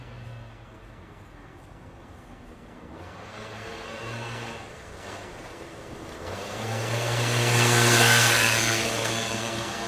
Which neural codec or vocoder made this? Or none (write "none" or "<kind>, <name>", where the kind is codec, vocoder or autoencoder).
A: codec, SNAC